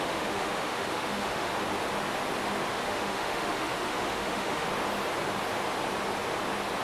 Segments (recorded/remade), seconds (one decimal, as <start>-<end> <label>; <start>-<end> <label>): 0.0-1.5 remade; 1.5-2.7 recorded; 2.7-4.7 remade; 4.7-6.8 recorded